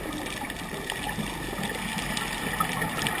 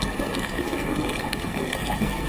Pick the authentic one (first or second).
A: first